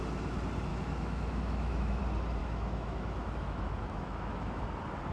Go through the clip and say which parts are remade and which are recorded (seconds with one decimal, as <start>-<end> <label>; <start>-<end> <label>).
0.0-0.7 recorded; 0.7-2.0 remade; 2.0-2.4 recorded; 2.4-4.6 remade; 4.6-5.1 recorded